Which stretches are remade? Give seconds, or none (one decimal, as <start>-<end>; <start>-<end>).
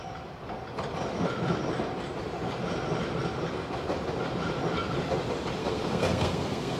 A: 5.6-6.8